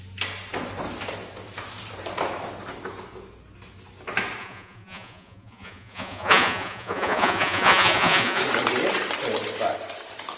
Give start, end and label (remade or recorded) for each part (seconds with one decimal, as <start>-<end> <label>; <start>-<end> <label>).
0.0-4.4 recorded; 4.4-8.4 remade; 8.4-10.4 recorded